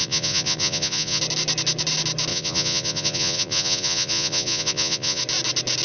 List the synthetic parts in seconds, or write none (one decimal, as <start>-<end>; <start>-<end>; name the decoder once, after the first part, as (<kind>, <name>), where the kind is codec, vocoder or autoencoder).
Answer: 0.0-1.2 (vocoder, Vocos); 2.3-5.2